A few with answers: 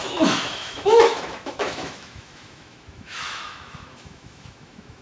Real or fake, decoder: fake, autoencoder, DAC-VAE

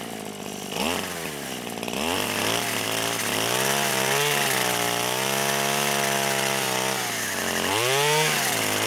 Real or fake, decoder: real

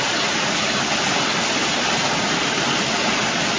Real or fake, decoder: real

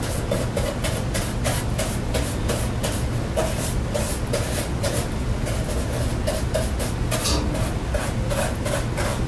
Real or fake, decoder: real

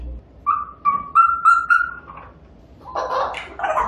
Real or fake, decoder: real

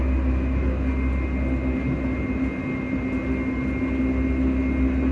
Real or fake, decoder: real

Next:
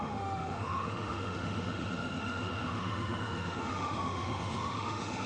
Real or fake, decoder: fake, autoencoder, DAC-VAE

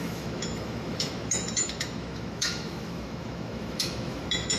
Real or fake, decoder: fake, autoencoder, DAC-VAE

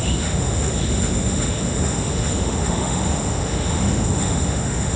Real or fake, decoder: fake, autoencoder, DAC-VAE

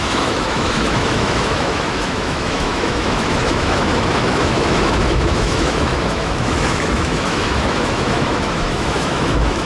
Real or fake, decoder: fake, autoencoder, DAC-VAE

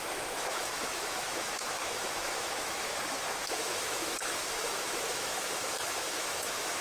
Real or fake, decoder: fake, autoencoder, DAC-VAE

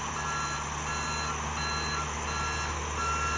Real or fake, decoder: real